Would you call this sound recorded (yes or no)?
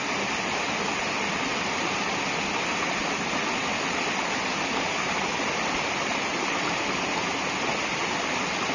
yes